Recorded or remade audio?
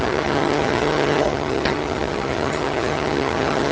remade